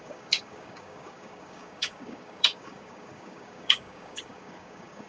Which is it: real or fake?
fake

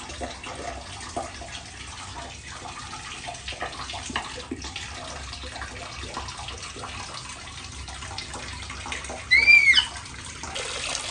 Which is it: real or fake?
real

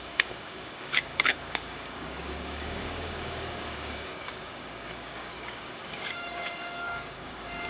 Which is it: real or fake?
fake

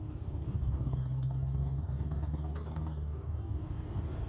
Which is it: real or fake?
fake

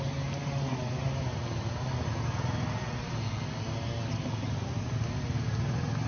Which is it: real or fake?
real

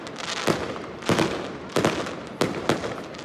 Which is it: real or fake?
real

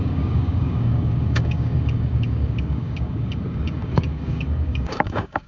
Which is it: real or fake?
fake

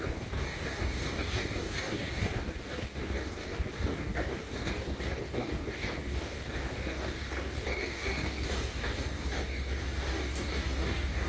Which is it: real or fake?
fake